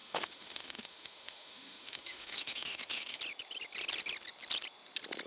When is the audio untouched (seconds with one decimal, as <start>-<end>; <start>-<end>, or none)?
3.2-5.3